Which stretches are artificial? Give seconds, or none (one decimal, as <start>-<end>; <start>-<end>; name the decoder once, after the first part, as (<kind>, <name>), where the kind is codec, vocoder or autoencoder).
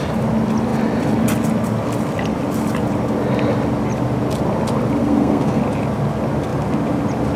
5.0-5.6 (codec, SNAC)